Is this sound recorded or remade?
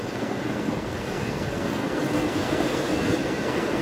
remade